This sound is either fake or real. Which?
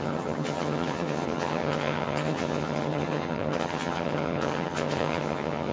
fake